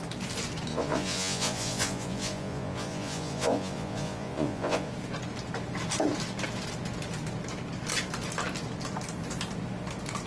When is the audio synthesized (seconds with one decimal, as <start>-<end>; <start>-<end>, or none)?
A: 0.7-4.9